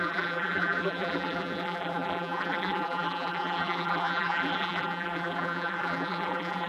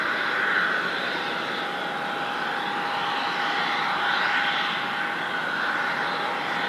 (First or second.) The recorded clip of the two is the second